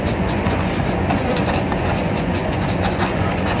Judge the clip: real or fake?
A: fake